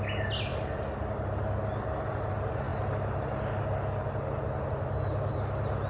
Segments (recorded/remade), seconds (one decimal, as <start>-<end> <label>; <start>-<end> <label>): 0.0-5.9 recorded